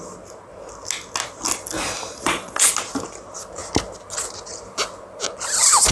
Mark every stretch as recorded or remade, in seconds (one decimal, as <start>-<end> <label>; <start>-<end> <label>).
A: 0.0-2.1 recorded; 2.1-2.7 remade; 2.7-5.9 recorded